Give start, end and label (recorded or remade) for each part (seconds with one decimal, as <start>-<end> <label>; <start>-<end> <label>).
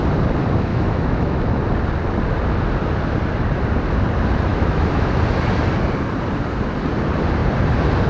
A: 0.0-0.7 recorded; 0.7-1.5 remade; 1.5-4.5 recorded; 4.5-5.1 remade; 5.1-8.1 recorded